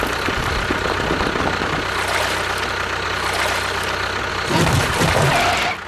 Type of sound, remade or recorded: recorded